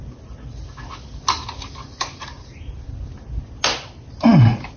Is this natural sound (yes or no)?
yes